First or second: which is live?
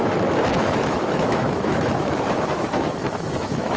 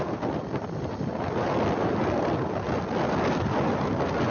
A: second